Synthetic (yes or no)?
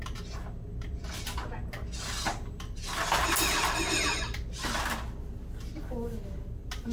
no